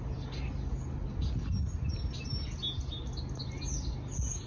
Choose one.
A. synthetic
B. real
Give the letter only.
B